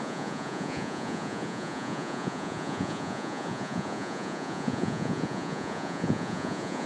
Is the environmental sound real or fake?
fake